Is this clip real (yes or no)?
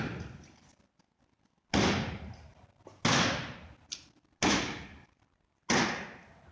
yes